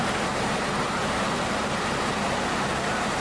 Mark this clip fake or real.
real